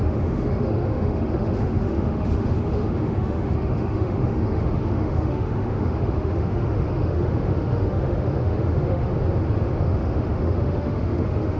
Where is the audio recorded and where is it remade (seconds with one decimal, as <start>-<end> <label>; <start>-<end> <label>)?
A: 0.0-9.1 remade; 9.1-9.8 recorded; 9.8-11.6 remade